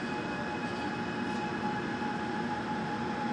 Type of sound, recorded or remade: recorded